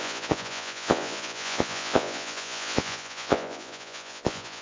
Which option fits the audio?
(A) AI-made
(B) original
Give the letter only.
A